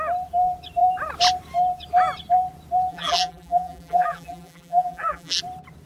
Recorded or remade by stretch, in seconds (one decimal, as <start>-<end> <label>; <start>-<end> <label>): 0.0-2.9 recorded; 2.9-5.4 remade; 5.4-5.9 recorded